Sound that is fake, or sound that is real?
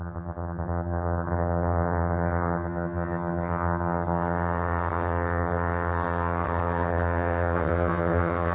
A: fake